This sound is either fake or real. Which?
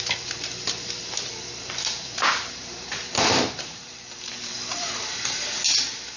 fake